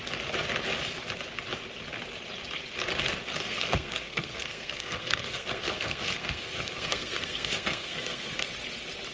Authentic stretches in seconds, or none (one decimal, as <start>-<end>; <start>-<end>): 0.0-3.4; 8.5-9.1